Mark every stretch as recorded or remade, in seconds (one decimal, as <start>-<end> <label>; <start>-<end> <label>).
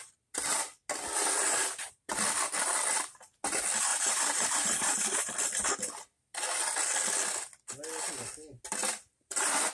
0.0-1.6 recorded; 1.6-2.1 remade; 2.1-3.9 recorded; 3.9-5.3 remade; 5.3-8.8 recorded; 8.8-9.7 remade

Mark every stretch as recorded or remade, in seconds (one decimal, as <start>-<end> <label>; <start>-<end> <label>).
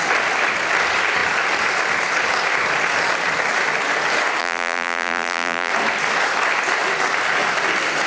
0.0-4.4 recorded; 4.4-5.7 remade; 5.7-8.1 recorded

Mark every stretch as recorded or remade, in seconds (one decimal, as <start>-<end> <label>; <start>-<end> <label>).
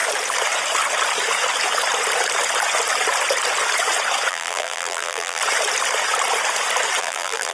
0.0-4.3 recorded; 4.3-5.4 remade; 5.4-7.0 recorded; 7.0-7.5 remade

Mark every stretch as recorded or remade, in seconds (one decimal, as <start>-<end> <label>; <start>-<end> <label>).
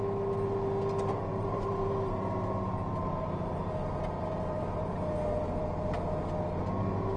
0.0-1.3 recorded; 1.3-4.9 remade; 4.9-7.2 recorded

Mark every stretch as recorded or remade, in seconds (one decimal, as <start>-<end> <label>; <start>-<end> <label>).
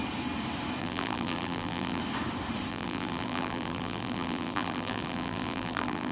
0.0-0.8 recorded; 0.8-2.0 remade; 2.0-2.7 recorded; 2.7-6.1 remade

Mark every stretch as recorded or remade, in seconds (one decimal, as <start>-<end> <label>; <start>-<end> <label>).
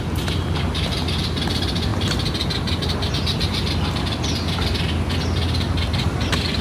0.0-1.9 remade; 1.9-4.0 recorded; 4.0-5.4 remade; 5.4-5.9 recorded; 5.9-6.6 remade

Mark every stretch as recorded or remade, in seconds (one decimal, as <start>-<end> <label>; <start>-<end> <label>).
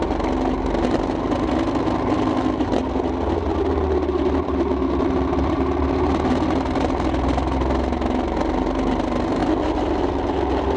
0.0-10.8 recorded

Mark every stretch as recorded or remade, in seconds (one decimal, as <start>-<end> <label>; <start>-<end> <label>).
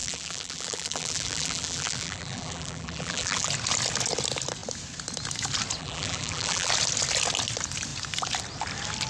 0.0-3.5 remade; 3.5-5.8 recorded; 5.8-6.7 remade; 6.7-9.1 recorded